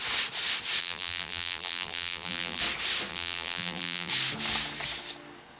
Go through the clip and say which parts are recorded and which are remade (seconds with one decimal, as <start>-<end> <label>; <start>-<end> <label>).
0.0-0.8 recorded; 0.8-2.6 remade; 2.6-3.1 recorded; 3.1-4.1 remade; 4.1-5.6 recorded